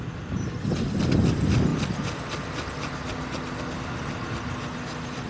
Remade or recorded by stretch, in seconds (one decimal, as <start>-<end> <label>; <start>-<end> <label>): 0.0-5.3 recorded